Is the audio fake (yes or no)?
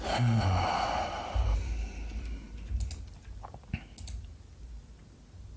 no